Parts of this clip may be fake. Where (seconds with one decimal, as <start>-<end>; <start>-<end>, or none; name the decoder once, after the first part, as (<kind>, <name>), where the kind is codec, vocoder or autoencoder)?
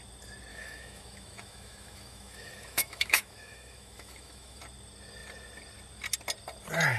0.5-4.6 (autoencoder, DAC-VAE)